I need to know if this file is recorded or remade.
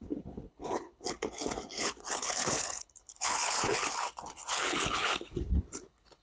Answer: remade